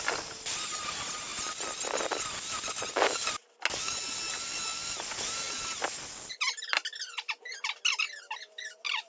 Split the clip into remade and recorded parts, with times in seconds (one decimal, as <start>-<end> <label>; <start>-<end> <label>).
0.0-9.1 recorded